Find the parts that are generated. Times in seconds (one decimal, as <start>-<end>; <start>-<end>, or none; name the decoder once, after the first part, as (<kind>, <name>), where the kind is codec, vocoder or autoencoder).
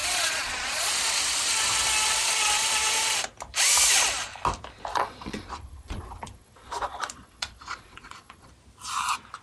0.0-0.9 (vocoder, Vocos); 4.9-8.5